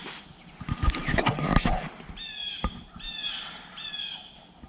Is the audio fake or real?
real